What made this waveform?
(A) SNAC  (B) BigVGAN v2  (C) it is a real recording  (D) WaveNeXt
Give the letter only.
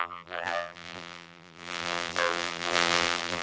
B